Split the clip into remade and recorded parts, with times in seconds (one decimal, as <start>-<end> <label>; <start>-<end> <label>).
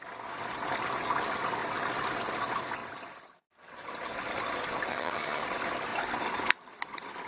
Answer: 0.0-4.9 recorded; 4.9-5.4 remade; 5.4-7.3 recorded